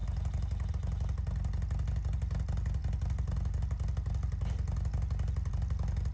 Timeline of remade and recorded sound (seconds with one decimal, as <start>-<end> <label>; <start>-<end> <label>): 0.0-6.1 recorded